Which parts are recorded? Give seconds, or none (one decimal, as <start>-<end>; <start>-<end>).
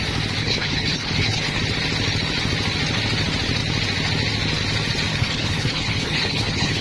0.0-0.4; 1.6-5.1